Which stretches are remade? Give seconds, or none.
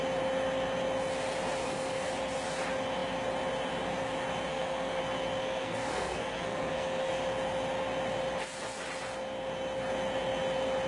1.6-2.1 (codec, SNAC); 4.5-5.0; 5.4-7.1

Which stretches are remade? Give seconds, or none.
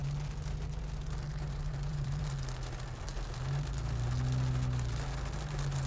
1.3-2.3 (vocoder, BigVGAN v2)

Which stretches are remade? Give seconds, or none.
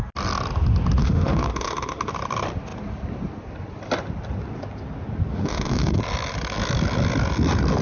1.0-2.1 (autoencoder, DAC-VAE); 5.3-6.0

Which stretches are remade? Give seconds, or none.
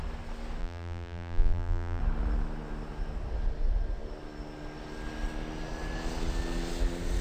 0.6-2.0 (vocoder, BigVGAN v2)